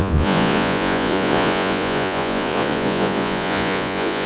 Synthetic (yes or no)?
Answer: yes